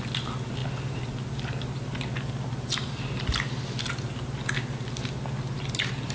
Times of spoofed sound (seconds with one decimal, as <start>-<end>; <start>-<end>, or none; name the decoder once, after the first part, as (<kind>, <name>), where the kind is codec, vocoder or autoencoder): none